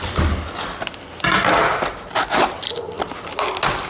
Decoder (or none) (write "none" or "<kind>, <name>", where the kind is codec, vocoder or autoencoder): none